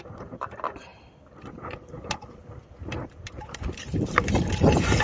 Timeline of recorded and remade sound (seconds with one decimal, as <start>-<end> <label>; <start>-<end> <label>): 0.0-5.0 remade